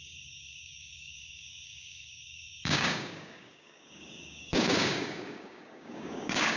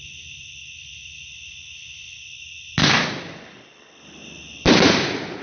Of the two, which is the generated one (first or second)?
first